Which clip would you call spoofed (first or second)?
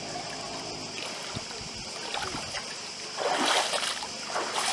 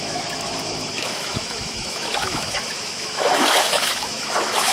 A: second